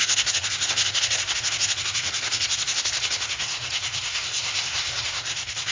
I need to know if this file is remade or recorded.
remade